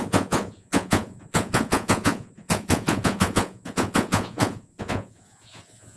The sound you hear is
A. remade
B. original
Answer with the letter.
A